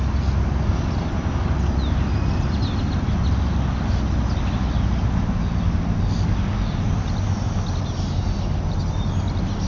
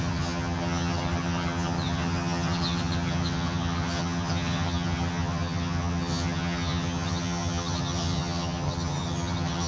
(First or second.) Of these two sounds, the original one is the first